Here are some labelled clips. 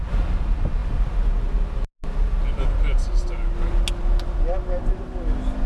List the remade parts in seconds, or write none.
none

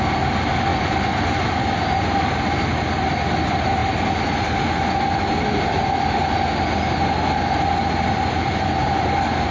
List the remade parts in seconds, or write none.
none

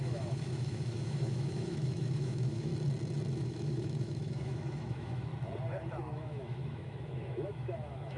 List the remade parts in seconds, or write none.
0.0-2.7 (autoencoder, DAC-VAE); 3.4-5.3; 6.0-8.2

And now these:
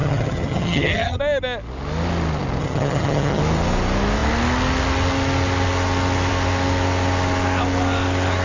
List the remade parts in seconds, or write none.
0.0-1.2 (vocoder, HiFi-GAN); 2.6-3.4

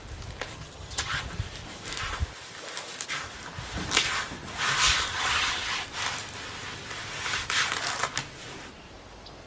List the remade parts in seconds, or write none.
0.5-1.2 (vocoder, HiFi-GAN); 5.1-5.7

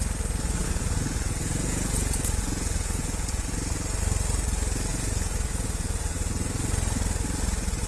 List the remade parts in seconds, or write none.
0.6-3.5 (vocoder, Vocos); 4.9-6.3

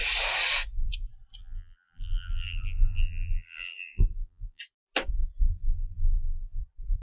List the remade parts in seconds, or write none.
1.4-4.6 (vocoder, BigVGAN v2); 5.5-6.6

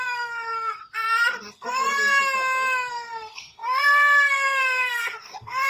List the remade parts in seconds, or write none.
0.0-0.8 (codec, SNAC); 1.5-2.2; 2.9-5.7